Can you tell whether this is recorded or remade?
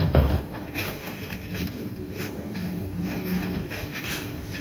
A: remade